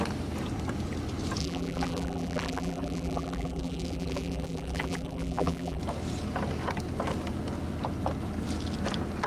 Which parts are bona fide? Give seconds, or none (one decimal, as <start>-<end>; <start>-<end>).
0.0-1.4; 5.8-9.3